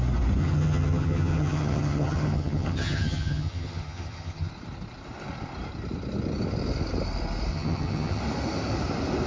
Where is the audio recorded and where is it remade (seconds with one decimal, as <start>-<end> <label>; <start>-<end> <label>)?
0.0-0.4 recorded; 0.4-4.5 remade; 4.5-7.5 recorded; 7.5-8.2 remade; 8.2-9.3 recorded